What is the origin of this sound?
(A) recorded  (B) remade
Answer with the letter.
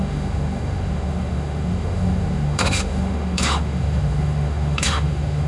B